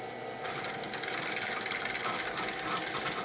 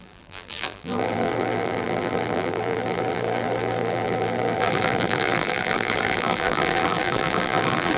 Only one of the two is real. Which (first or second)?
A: first